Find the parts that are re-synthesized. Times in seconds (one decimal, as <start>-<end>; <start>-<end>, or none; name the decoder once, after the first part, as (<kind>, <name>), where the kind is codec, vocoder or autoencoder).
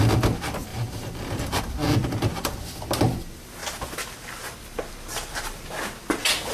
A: 0.7-1.6 (vocoder, BigVGAN v2); 2.0-2.5